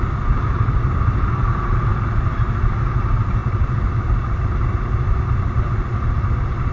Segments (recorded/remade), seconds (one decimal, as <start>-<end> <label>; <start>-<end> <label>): 0.0-6.7 recorded